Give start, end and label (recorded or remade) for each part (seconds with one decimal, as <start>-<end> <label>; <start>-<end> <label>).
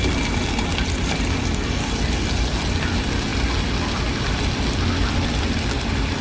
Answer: 0.0-6.2 recorded